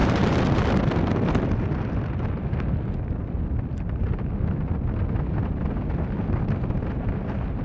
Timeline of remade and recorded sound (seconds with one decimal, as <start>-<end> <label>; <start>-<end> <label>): 0.0-2.4 remade; 2.4-7.6 recorded